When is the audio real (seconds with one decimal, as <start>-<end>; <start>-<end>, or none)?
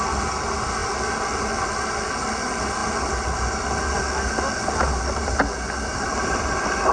0.0-5.9